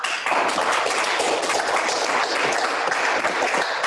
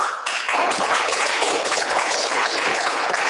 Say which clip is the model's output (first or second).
second